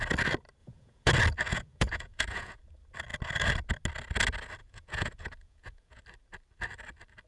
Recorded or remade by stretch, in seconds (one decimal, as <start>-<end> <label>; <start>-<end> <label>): 0.0-0.6 recorded; 0.6-1.1 remade; 1.1-1.5 recorded; 1.5-2.6 remade; 2.6-4.6 recorded; 4.6-6.0 remade; 6.0-7.3 recorded